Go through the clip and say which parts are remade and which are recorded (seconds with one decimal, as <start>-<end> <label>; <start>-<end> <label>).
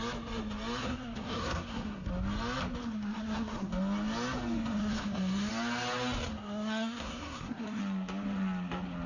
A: 0.0-0.8 recorded; 0.8-2.1 remade; 2.1-2.8 recorded; 2.8-3.7 remade; 3.7-4.8 recorded; 4.8-5.5 remade; 5.5-6.3 recorded; 6.3-7.8 remade; 7.8-9.1 recorded